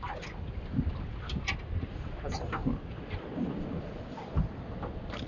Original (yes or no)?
yes